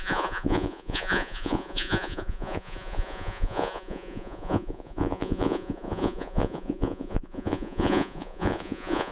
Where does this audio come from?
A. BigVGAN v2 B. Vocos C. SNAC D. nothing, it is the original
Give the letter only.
B